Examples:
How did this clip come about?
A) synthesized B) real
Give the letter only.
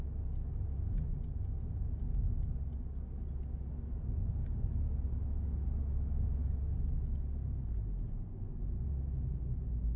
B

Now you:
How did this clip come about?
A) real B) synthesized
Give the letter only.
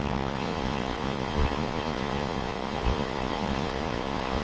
B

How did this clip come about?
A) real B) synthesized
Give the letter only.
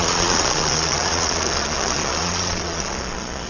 B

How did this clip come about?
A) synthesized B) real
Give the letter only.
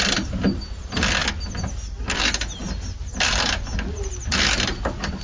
B